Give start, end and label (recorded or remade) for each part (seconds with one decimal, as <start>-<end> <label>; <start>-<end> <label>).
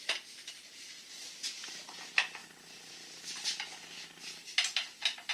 0.0-5.3 recorded